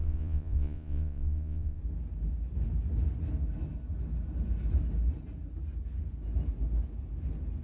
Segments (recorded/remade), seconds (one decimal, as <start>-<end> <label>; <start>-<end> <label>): 0.0-1.8 remade; 1.8-7.6 recorded